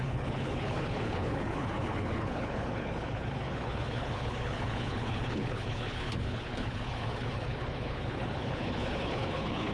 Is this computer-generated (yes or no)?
yes